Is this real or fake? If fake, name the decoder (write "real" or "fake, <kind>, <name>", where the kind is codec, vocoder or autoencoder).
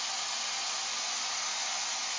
real